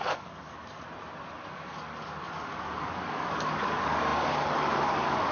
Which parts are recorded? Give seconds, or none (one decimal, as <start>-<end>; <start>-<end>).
0.6-1.5

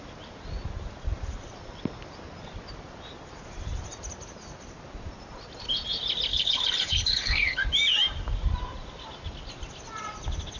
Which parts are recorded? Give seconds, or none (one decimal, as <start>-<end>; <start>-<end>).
0.0-6.3; 7.6-10.6

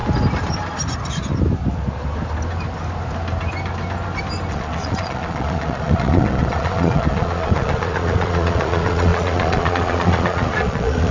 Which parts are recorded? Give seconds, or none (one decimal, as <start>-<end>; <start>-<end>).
0.0-4.5

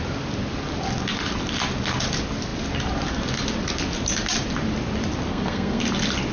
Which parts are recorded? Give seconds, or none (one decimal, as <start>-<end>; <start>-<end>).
0.0-5.3; 5.8-6.3

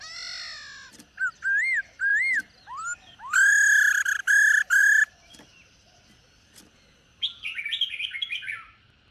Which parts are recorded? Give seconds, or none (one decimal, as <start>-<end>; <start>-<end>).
0.0-9.1